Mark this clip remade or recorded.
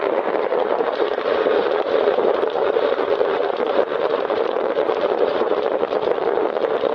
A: remade